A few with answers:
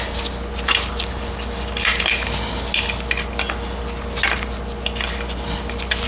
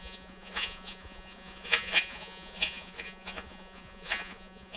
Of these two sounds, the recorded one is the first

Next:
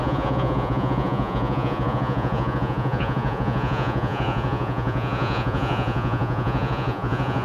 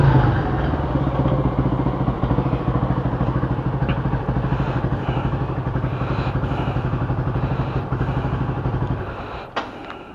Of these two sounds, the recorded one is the second